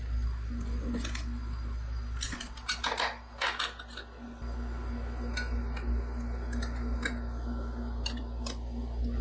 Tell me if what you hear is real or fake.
real